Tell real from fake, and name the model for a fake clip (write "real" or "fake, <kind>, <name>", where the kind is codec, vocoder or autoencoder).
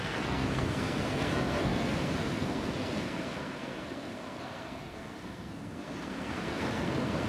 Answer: fake, codec, SNAC